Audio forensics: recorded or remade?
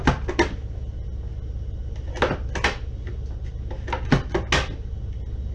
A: recorded